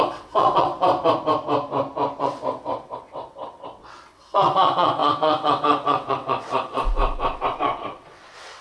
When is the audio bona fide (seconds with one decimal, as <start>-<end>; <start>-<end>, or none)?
0.7-2.2